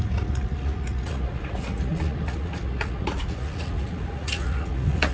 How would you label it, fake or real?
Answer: fake